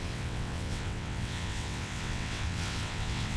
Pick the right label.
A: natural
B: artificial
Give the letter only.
B